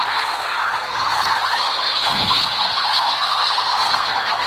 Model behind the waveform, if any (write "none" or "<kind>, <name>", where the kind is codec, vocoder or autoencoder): codec, SNAC